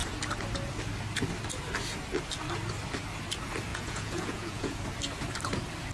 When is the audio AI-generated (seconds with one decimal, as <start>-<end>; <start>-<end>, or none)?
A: 3.7-4.8